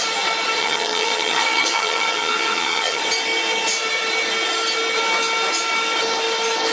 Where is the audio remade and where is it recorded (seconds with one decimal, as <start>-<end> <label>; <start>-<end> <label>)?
0.0-0.6 recorded; 0.6-3.0 remade; 3.0-6.7 recorded